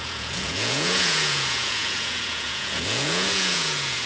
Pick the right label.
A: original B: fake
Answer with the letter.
B